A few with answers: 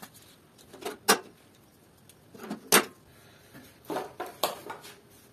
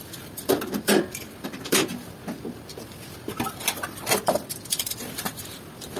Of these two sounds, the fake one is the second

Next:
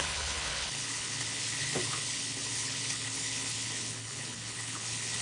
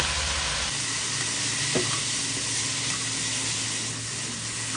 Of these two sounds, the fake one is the first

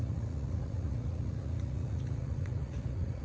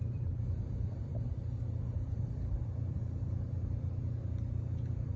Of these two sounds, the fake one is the first